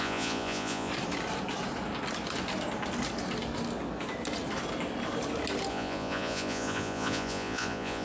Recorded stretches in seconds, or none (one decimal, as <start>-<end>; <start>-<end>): 0.9-5.7

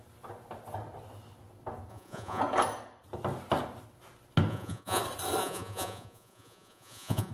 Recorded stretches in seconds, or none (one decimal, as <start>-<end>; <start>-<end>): 0.0-1.9; 2.4-4.5; 5.0-5.4

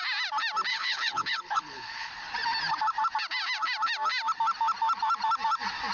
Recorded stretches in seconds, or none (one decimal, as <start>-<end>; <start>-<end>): 0.0-0.7; 2.1-5.9

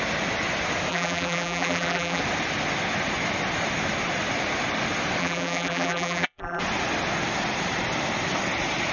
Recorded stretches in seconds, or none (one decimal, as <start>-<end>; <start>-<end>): 0.0-0.9; 2.2-5.2; 6.6-8.9

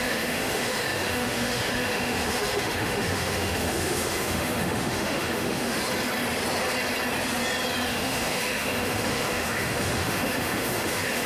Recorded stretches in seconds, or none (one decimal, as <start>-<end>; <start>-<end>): 5.8-7.9